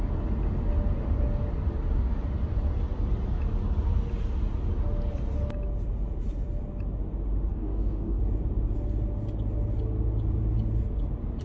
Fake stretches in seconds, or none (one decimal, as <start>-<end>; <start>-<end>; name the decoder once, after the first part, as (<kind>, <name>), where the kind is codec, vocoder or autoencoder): 7.5-8.2 (codec, DAC)